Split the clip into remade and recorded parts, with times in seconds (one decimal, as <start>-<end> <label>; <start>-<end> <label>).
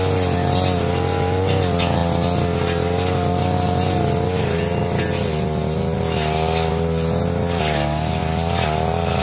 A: 0.0-8.2 recorded; 8.2-9.2 remade